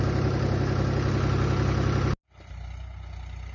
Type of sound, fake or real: real